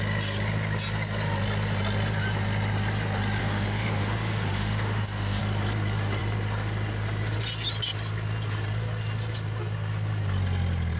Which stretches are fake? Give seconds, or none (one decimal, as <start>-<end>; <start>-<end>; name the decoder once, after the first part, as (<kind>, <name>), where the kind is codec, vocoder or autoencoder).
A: 3.4-5.4 (autoencoder, DAC-VAE)